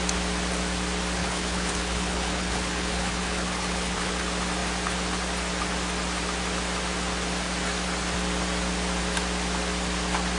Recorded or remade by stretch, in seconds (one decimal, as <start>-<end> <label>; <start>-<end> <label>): 0.0-1.2 recorded; 1.2-4.1 remade; 4.1-10.4 recorded